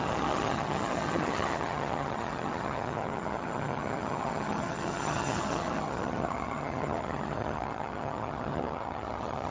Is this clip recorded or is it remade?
remade